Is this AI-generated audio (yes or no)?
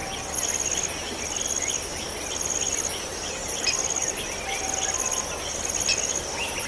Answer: no